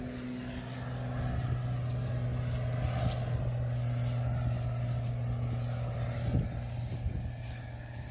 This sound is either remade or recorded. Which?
recorded